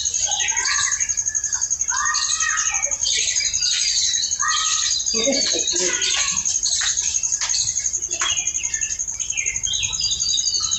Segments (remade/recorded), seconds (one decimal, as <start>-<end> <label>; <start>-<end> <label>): 0.0-3.0 recorded; 3.0-5.0 remade; 5.0-10.8 recorded